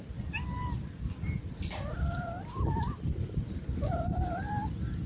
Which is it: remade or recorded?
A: recorded